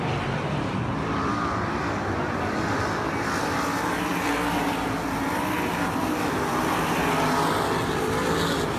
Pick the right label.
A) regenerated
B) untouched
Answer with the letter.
B